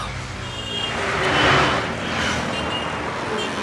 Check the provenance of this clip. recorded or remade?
recorded